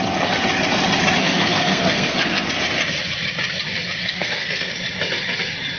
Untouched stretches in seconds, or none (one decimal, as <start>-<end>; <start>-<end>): 0.0-1.2; 2.5-4.0; 4.7-5.8